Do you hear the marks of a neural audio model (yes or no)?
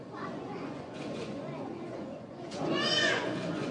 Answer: yes